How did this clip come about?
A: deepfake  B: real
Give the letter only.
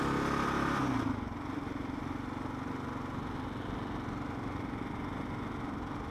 B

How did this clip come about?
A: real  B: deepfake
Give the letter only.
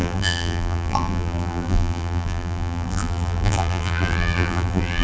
B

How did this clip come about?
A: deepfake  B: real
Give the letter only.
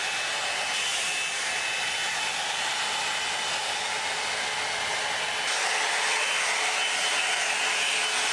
B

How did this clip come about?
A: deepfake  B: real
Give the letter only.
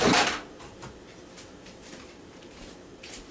A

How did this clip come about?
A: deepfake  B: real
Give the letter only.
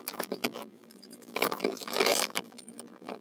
A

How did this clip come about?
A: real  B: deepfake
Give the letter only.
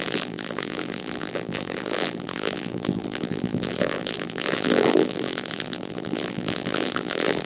B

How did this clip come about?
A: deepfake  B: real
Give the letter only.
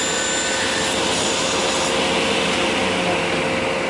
B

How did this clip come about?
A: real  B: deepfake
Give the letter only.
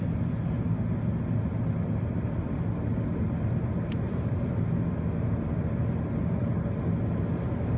A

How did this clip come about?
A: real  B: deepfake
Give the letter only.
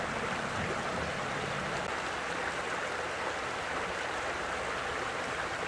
A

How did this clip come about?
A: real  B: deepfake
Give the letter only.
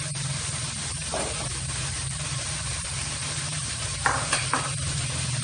B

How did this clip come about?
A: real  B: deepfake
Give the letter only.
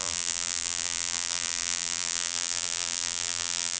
B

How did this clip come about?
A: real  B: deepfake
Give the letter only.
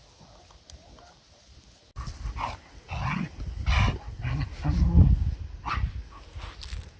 A